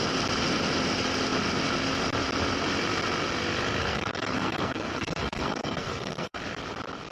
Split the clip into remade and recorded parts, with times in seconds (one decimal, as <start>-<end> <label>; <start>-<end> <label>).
0.0-3.8 recorded; 3.8-6.4 remade; 6.4-7.1 recorded